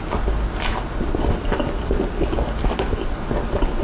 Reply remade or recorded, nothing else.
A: recorded